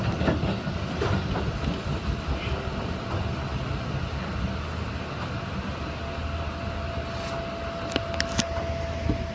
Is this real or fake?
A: real